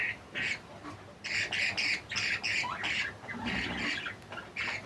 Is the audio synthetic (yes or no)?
no